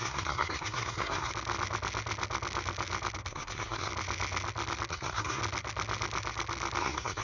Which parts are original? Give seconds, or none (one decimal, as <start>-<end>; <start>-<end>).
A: 1.3-3.3; 3.9-4.9; 5.4-6.8